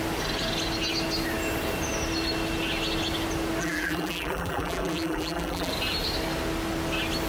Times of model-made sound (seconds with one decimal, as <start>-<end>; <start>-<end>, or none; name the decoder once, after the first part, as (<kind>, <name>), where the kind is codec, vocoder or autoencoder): 3.6-5.7 (vocoder, BigVGAN v2)